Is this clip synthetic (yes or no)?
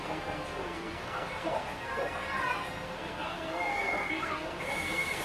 yes